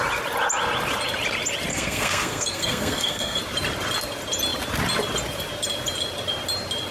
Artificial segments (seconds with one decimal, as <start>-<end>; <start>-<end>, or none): 1.7-3.4